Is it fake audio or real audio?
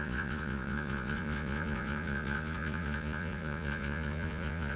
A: fake